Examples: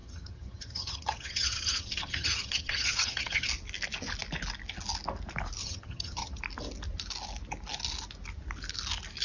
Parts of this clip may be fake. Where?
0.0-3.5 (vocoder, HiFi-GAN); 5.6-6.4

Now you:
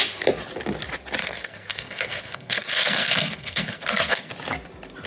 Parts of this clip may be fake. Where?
1.2-4.3 (codec, SNAC)

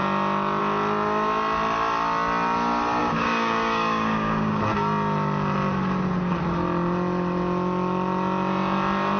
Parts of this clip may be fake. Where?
3.0-4.6 (codec, DAC)

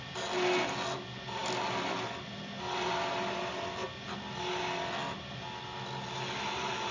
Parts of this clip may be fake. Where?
none